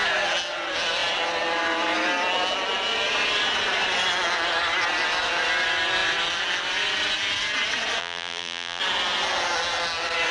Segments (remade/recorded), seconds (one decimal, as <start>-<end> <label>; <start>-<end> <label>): 0.0-8.0 recorded; 8.0-8.8 remade; 8.8-10.3 recorded